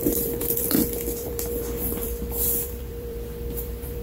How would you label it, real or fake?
fake